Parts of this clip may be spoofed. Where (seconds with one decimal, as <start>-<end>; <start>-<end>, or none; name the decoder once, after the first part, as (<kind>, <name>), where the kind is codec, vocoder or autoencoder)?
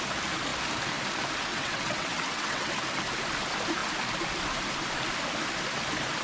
1.5-2.7 (vocoder, WaveNeXt)